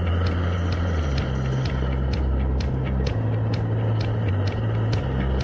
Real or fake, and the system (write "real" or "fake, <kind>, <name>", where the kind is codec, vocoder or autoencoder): real